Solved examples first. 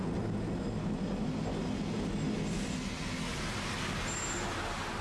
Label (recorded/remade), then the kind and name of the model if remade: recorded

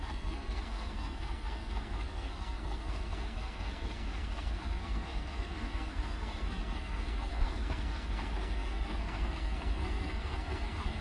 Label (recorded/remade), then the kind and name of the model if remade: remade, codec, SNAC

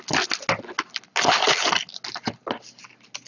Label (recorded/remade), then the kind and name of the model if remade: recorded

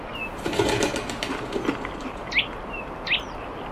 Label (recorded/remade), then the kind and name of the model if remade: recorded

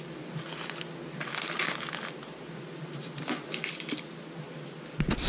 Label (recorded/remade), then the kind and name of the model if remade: recorded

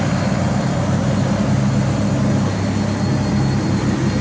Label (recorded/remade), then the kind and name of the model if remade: recorded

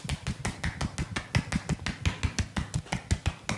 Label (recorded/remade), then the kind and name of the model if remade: recorded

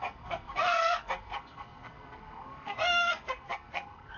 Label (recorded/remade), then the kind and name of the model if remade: remade, codec, SNAC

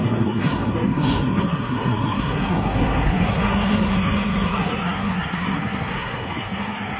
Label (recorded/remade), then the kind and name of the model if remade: remade, codec, SNAC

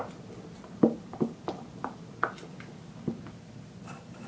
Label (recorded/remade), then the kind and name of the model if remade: recorded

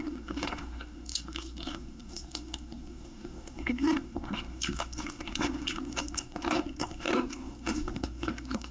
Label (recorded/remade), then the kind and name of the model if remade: remade, codec, SNAC